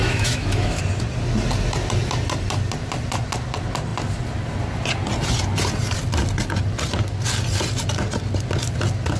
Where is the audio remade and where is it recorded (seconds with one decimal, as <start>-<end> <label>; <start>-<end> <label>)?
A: 0.0-0.8 remade; 0.8-9.2 recorded